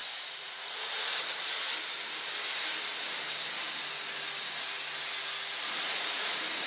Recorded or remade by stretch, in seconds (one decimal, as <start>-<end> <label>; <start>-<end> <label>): 0.0-1.7 remade; 1.7-5.7 recorded; 5.7-6.7 remade